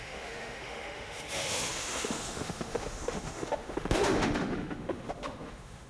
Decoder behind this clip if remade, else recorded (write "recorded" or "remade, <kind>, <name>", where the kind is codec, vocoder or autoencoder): remade, autoencoder, DAC-VAE